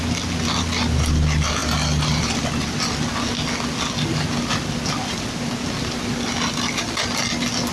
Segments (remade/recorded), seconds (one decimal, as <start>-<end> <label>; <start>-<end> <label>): 0.0-7.7 recorded